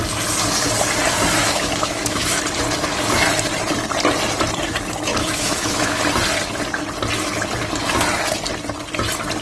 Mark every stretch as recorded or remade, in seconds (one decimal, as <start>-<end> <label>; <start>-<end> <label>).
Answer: 0.0-1.4 recorded; 1.4-2.4 remade; 2.4-5.1 recorded; 5.1-6.0 remade; 6.0-9.4 recorded